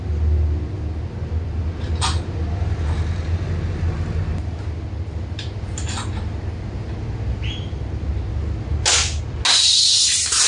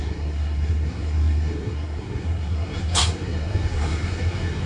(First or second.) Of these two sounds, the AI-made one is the second